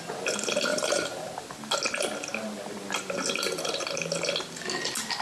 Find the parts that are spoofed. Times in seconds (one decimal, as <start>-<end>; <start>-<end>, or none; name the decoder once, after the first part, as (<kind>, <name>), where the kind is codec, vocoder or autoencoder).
0.7-1.3 (vocoder, BigVGAN v2)